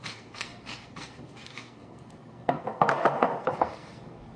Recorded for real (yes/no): no